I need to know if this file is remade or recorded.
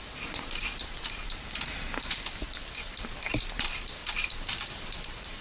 remade